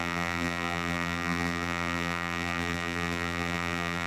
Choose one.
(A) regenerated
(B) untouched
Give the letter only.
A